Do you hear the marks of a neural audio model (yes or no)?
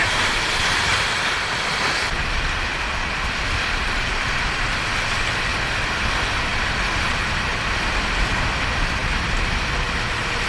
yes